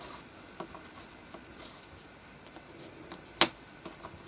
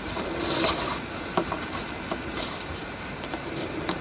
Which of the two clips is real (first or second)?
first